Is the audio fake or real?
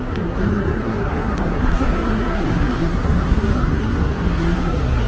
fake